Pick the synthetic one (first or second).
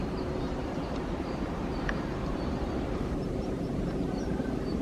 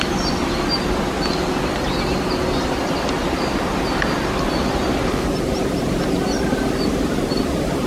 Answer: first